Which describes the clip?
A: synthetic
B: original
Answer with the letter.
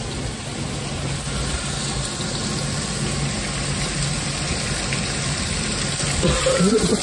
B